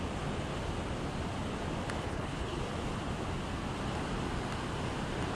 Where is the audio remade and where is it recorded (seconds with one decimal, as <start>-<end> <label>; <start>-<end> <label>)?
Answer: 0.0-2.0 recorded; 2.0-2.6 remade; 2.6-5.4 recorded

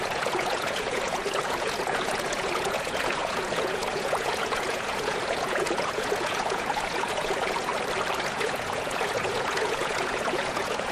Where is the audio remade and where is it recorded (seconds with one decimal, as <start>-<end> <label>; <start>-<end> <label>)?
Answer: 0.0-7.7 remade; 7.7-8.2 recorded; 8.2-10.9 remade

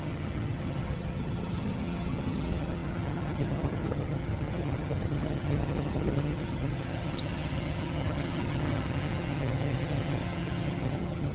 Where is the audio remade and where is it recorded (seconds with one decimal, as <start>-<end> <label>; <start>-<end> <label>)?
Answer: 0.0-11.3 remade